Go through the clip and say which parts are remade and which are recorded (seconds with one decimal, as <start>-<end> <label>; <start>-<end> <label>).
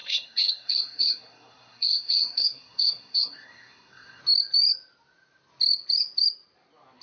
0.0-4.2 remade; 4.2-7.0 recorded